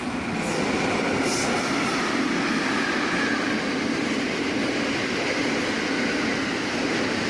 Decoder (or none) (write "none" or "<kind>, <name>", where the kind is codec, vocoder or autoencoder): vocoder, BigVGAN v2